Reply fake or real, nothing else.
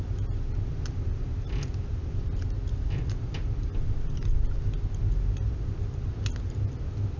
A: real